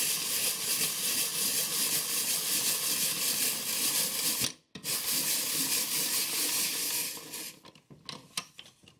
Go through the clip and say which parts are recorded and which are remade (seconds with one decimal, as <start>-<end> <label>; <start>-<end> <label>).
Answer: 0.0-9.0 recorded